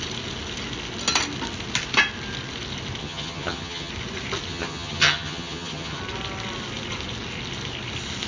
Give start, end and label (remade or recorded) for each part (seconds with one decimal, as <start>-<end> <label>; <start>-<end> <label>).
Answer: 0.0-3.0 recorded; 3.0-3.9 remade; 3.9-4.5 recorded; 4.5-6.0 remade; 6.0-8.3 recorded